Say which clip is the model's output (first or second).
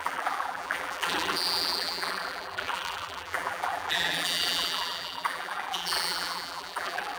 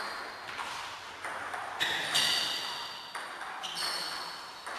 first